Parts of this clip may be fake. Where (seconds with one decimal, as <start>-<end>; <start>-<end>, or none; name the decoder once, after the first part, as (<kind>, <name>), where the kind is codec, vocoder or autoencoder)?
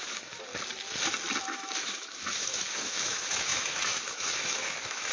0.0-0.5 (autoencoder, DAC-VAE); 1.4-5.1